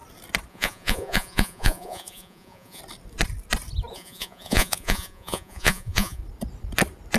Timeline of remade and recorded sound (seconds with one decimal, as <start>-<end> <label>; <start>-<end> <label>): 0.0-0.5 recorded; 0.5-2.8 remade; 2.8-3.9 recorded; 3.9-6.2 remade; 6.2-7.2 recorded